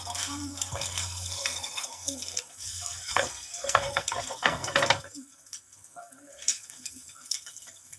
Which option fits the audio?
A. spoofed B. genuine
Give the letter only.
A